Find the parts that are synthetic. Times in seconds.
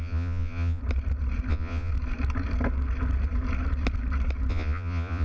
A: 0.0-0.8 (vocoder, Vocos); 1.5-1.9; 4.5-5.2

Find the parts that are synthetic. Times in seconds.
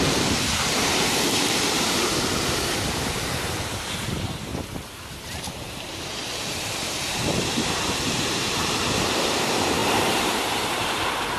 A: 0.0-11.4 (vocoder, BigVGAN v2)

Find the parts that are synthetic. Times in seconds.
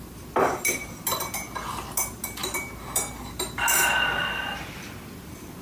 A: none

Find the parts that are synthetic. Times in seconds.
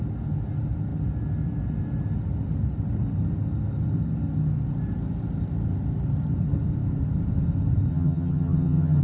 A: 7.9-9.0 (vocoder, HiFi-GAN)